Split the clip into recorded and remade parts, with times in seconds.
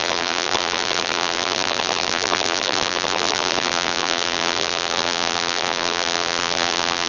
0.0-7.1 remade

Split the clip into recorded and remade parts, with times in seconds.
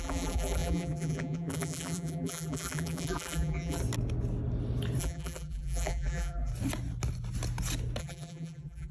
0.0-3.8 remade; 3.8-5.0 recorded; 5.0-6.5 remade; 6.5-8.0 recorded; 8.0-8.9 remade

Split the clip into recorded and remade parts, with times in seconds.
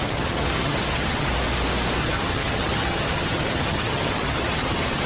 0.0-1.3 remade; 1.3-2.0 recorded; 2.0-5.1 remade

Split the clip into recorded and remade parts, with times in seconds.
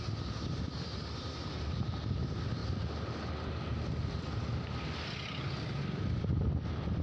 0.0-7.0 recorded